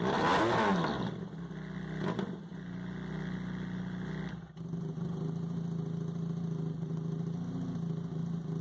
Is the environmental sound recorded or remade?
recorded